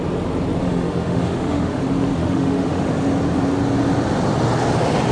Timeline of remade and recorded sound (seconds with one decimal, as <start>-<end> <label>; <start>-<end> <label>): 0.0-0.6 recorded; 0.6-1.8 remade; 1.8-2.2 recorded; 2.2-2.9 remade; 2.9-5.1 recorded